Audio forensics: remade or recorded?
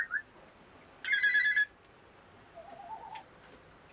recorded